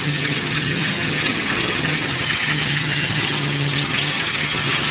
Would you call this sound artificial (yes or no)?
yes